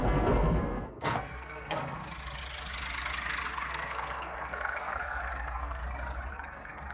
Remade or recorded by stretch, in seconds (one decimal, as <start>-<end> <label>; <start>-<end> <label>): 0.0-2.0 remade; 2.0-3.7 recorded; 3.7-5.8 remade; 5.8-6.3 recorded; 6.3-6.9 remade